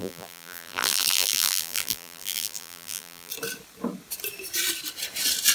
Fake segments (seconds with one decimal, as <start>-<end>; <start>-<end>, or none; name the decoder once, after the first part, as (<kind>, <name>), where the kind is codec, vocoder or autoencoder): 0.0-3.3 (vocoder, BigVGAN v2)